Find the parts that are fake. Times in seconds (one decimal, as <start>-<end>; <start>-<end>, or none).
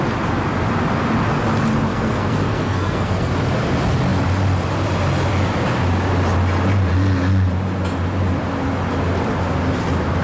1.9-3.3